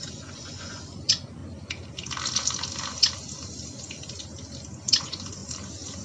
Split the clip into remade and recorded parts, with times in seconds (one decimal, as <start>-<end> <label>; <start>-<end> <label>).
0.0-1.4 remade; 1.4-5.0 recorded; 5.0-5.4 remade; 5.4-6.0 recorded